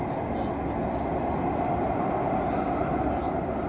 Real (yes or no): yes